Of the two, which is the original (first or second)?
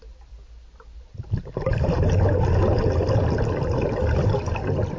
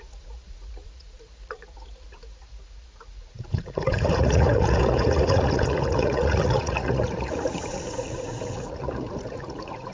first